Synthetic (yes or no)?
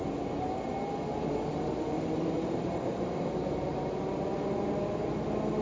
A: no